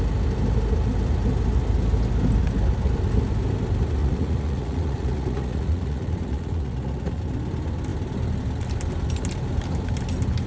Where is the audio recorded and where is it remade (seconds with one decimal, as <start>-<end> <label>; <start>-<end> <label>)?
0.0-4.0 recorded; 4.0-7.2 remade; 7.2-10.5 recorded